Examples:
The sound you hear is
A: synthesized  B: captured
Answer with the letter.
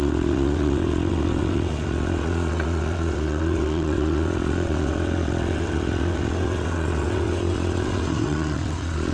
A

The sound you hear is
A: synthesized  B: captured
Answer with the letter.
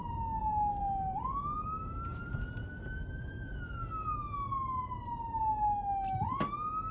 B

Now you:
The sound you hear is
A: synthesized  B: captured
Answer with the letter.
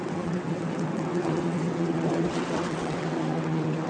A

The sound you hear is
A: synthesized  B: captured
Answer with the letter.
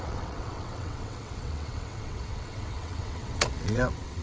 A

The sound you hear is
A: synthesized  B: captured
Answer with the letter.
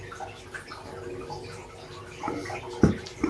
B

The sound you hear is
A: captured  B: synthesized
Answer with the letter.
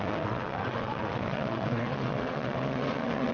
B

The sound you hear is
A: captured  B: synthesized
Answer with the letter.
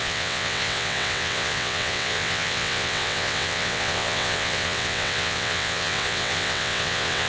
B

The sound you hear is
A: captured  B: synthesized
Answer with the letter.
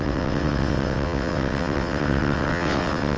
B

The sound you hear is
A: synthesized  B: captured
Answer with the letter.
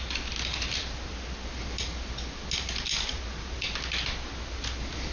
B